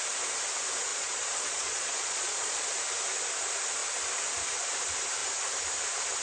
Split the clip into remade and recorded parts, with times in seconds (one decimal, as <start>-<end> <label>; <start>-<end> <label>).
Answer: 0.0-0.9 recorded; 0.9-2.7 remade; 2.7-6.2 recorded